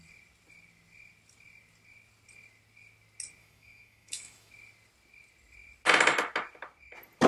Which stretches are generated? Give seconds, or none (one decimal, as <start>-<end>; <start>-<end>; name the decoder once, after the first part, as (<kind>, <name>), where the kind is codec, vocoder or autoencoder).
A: 3.4-4.5 (autoencoder, DAC-VAE)